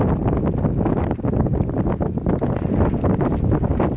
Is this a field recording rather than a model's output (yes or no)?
yes